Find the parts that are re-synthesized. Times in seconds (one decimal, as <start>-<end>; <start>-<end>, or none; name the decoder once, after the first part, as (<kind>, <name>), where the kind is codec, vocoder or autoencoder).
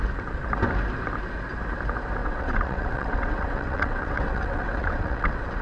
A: 2.2-5.6 (vocoder, WaveNeXt)